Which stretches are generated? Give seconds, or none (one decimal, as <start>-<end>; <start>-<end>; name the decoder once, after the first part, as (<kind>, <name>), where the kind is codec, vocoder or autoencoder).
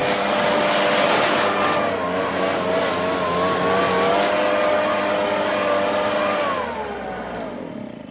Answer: none